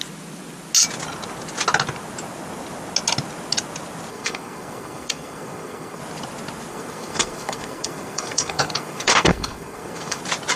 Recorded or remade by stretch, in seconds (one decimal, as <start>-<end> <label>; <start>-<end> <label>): 0.0-4.1 recorded; 4.1-6.0 remade; 6.0-6.7 recorded; 6.7-10.2 remade; 10.2-10.6 recorded